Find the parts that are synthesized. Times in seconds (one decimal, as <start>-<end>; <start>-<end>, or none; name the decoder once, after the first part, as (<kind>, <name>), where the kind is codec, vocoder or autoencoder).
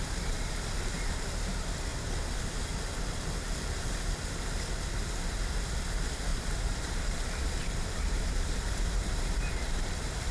6.3-10.3 (vocoder, BigVGAN v2)